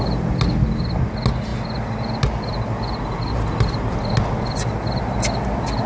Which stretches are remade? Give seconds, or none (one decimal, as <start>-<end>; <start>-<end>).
none